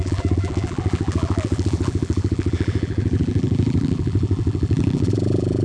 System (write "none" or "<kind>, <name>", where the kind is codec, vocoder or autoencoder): vocoder, BigVGAN v2